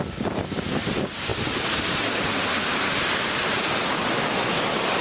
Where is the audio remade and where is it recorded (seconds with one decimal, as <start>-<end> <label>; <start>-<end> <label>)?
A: 0.0-5.0 recorded